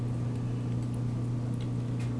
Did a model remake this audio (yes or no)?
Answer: no